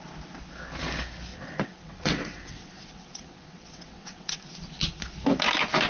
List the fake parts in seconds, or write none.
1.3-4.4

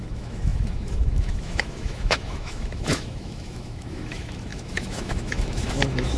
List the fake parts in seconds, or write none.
0.0-6.2

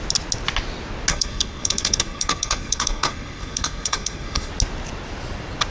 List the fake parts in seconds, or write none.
1.1-4.5

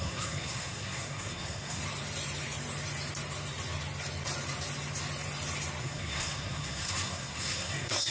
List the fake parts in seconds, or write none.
0.0-1.8; 5.8-8.1